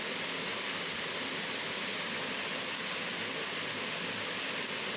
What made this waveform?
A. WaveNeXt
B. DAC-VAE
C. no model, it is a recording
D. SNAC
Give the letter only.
C